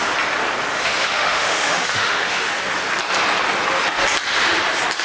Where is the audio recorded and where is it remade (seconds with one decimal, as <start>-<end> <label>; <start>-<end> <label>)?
0.0-0.7 recorded; 0.7-2.5 remade; 2.5-5.0 recorded